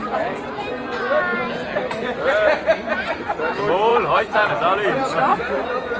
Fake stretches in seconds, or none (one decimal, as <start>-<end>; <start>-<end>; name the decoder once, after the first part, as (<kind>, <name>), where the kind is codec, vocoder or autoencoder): 3.9-4.5 (vocoder, Vocos); 5.3-6.0